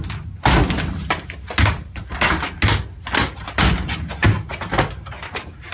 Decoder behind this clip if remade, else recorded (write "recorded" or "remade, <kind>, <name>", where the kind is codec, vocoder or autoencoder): recorded